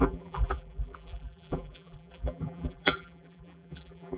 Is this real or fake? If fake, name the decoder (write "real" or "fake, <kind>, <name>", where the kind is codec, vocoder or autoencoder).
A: fake, vocoder, BigVGAN v2